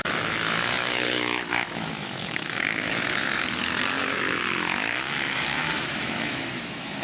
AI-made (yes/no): yes